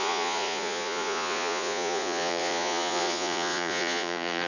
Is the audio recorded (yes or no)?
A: no